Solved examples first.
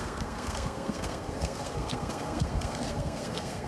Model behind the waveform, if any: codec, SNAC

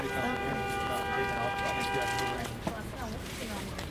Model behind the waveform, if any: none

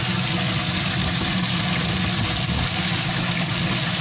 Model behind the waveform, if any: none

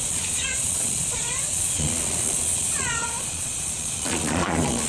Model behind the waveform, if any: vocoder, Vocos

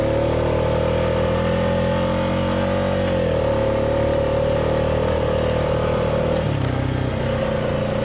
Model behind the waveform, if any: none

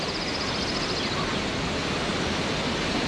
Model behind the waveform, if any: none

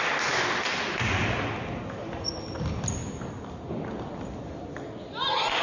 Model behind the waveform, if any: none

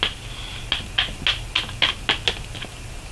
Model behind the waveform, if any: none